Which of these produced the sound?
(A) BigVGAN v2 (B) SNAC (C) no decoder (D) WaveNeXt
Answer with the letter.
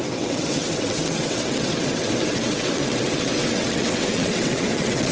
D